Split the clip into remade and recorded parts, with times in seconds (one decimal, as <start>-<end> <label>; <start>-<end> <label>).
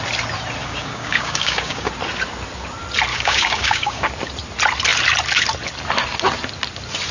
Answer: 0.0-0.6 recorded; 0.6-1.9 remade; 1.9-3.1 recorded; 3.1-4.1 remade; 4.1-7.1 recorded